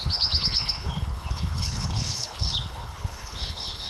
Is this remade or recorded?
remade